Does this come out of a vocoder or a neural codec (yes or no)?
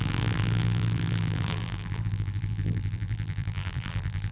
yes